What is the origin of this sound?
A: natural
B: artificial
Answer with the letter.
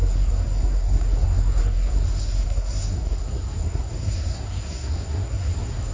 B